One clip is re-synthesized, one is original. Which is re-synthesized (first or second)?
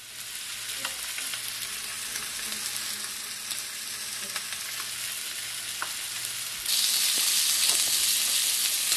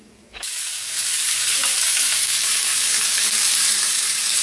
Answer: second